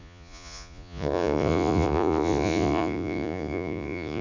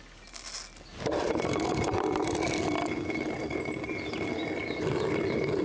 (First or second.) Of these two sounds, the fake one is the first